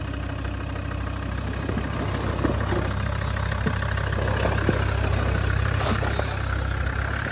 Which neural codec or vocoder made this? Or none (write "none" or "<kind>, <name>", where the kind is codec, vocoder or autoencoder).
none